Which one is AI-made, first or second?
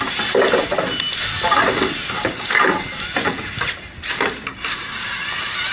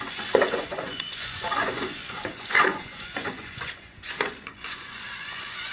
second